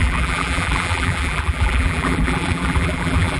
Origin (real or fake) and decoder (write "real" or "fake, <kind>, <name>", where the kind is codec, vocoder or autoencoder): fake, vocoder, BigVGAN v2